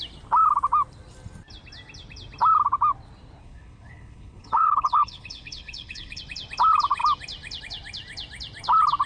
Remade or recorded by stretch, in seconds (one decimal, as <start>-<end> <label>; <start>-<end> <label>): 0.0-3.4 recorded; 3.4-6.2 remade; 6.2-9.1 recorded